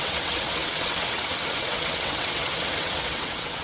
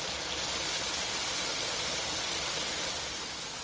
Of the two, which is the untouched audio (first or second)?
second